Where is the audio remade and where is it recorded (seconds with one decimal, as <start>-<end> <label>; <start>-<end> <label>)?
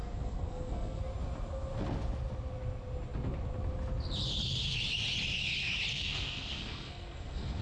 0.0-1.0 remade; 1.0-5.9 recorded; 5.9-7.6 remade